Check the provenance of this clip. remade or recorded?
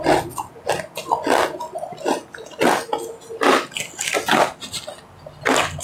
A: recorded